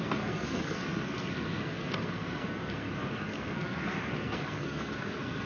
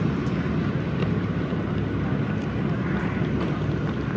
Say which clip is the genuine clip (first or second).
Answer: second